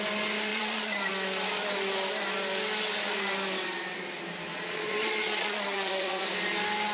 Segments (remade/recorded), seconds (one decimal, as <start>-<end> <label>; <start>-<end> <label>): 0.0-0.5 recorded; 0.5-1.1 remade; 1.1-4.5 recorded; 4.5-6.2 remade; 6.2-6.9 recorded